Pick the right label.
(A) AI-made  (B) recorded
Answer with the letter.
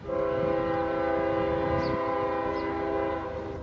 B